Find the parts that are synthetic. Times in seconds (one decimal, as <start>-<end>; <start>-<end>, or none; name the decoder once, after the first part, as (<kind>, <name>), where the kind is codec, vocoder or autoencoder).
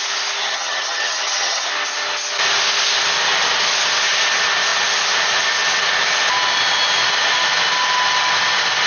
0.4-1.7 (vocoder, HiFi-GAN)